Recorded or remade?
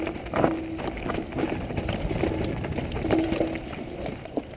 recorded